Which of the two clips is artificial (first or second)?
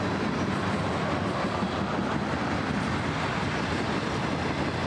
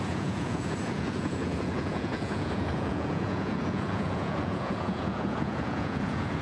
second